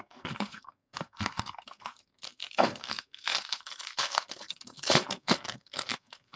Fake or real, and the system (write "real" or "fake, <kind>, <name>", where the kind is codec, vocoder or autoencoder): fake, codec, SNAC